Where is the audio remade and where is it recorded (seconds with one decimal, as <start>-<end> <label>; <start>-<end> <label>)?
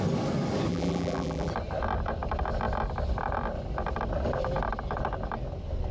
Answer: 0.0-0.7 recorded; 0.7-1.5 remade; 1.5-5.9 recorded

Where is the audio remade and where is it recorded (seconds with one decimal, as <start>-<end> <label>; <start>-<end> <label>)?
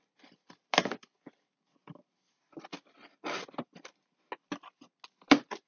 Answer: 0.0-5.7 recorded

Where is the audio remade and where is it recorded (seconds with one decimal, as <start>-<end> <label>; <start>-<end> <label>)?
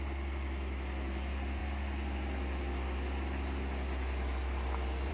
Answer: 0.0-5.1 recorded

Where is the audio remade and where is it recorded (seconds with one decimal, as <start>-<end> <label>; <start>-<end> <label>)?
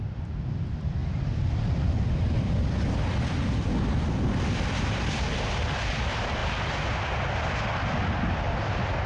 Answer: 0.0-9.1 recorded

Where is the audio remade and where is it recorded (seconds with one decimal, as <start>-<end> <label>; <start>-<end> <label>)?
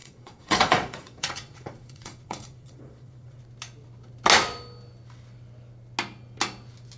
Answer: 0.0-3.4 remade; 3.4-7.0 recorded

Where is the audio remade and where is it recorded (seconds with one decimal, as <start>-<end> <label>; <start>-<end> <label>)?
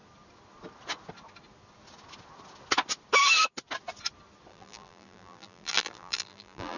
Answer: 0.0-4.5 recorded; 4.5-6.8 remade